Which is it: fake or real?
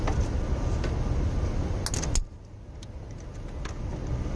real